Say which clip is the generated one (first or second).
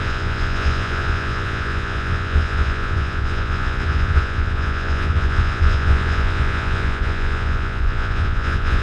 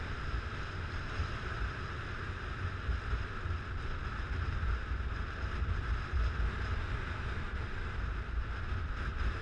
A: first